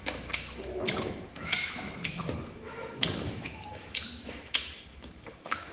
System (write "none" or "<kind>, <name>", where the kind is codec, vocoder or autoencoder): autoencoder, DAC-VAE